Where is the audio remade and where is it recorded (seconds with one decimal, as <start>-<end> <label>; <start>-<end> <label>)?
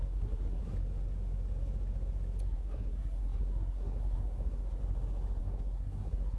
0.0-0.7 remade; 0.7-2.4 recorded; 2.4-4.8 remade; 4.8-5.4 recorded; 5.4-6.4 remade